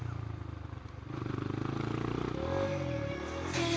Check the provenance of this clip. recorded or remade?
recorded